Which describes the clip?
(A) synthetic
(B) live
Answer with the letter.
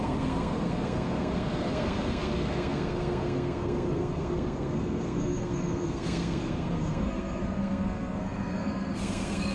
A